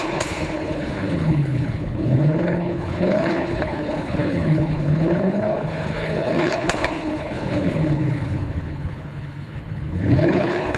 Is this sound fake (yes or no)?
yes